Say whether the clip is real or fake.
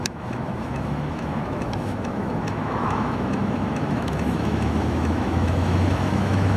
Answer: fake